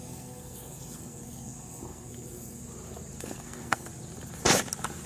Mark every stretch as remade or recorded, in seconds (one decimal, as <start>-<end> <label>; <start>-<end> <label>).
0.0-2.6 remade; 2.6-3.2 recorded; 3.2-3.9 remade; 3.9-5.1 recorded